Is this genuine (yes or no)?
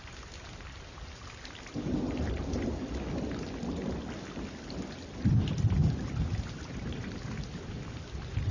yes